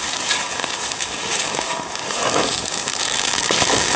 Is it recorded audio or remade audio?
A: remade